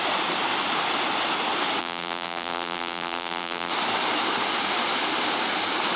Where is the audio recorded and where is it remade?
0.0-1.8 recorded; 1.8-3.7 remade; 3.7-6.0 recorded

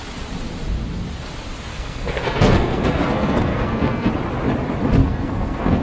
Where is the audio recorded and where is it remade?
0.0-1.7 recorded; 1.7-4.1 remade; 4.1-5.0 recorded; 5.0-5.8 remade

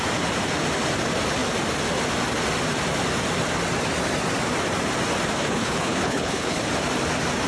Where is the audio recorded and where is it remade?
0.0-5.4 recorded; 5.4-6.6 remade; 6.6-7.5 recorded